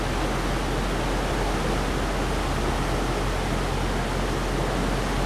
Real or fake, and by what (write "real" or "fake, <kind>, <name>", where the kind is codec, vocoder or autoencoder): real